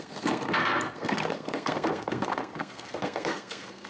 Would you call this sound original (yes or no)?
no